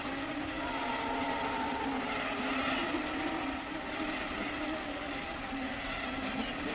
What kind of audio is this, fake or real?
real